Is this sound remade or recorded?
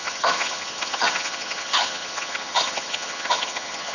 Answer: remade